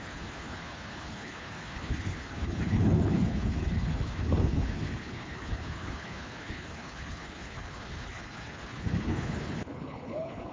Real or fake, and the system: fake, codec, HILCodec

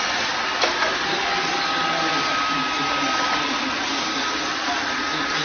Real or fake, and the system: real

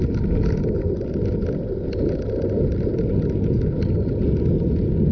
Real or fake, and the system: real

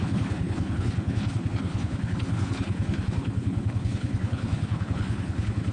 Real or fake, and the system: fake, codec, HILCodec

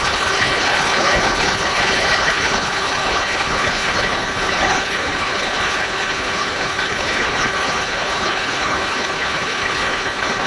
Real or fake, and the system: fake, codec, HILCodec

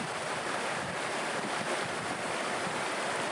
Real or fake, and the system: real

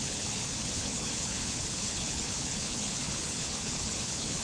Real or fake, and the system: fake, codec, HILCodec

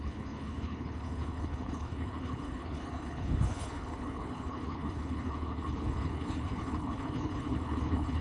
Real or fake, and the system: fake, codec, HILCodec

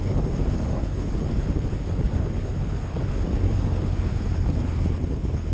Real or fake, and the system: fake, codec, HILCodec